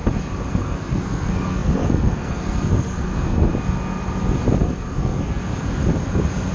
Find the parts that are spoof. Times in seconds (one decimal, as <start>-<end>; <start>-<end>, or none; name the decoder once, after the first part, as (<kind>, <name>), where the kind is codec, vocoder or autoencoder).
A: 0.5-3.5 (codec, SNAC); 4.6-5.5